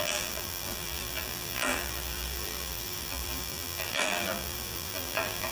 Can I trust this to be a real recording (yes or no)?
no